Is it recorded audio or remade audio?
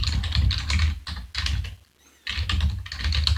recorded